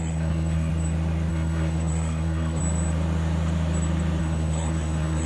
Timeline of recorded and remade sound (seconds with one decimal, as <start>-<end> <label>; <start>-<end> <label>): 0.0-0.7 remade; 0.7-1.3 recorded; 1.3-2.6 remade; 2.6-4.2 recorded; 4.2-5.3 remade